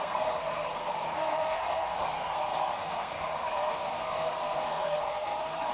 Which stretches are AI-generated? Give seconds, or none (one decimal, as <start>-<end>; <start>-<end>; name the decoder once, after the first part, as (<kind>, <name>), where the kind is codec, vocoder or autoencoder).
0.0-5.7 (codec, SNAC)